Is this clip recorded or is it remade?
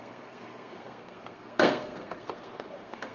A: remade